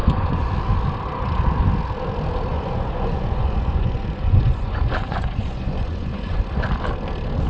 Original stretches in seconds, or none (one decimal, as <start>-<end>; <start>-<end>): 0.5-2.5; 6.4-7.5